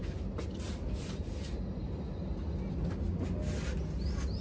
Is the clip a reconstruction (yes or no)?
no